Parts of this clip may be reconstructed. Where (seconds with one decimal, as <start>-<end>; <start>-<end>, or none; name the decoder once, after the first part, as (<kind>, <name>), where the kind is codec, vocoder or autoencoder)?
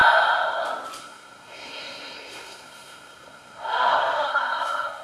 1.0-5.0 (codec, SNAC)